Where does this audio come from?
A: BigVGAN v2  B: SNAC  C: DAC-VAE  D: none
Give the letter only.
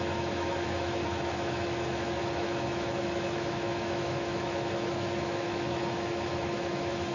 C